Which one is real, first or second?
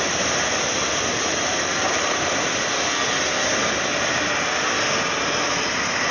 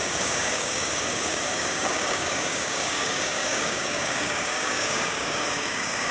first